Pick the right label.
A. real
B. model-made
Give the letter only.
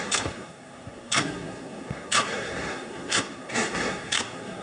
B